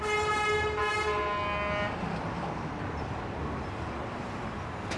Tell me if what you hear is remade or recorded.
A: recorded